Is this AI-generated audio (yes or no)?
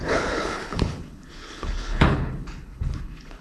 yes